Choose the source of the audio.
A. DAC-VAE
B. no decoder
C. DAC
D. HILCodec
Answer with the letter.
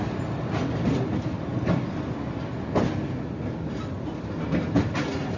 B